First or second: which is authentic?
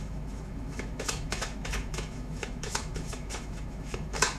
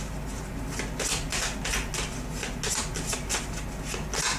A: second